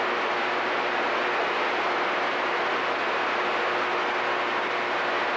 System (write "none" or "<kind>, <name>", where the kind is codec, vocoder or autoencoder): none